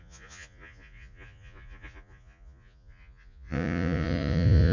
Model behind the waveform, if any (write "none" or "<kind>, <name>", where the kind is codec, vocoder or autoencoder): vocoder, Vocos